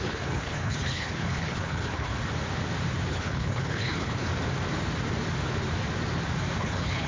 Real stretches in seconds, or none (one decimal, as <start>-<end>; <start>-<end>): 2.1-3.1; 4.3-6.6